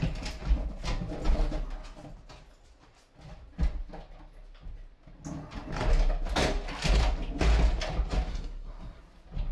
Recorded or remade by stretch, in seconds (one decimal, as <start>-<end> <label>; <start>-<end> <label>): 0.0-8.3 recorded; 8.3-9.0 remade; 9.0-9.5 recorded